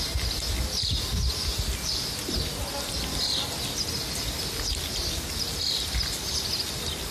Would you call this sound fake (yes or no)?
no